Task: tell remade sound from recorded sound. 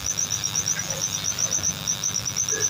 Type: recorded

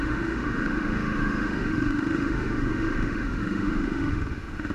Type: remade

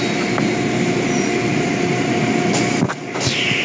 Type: recorded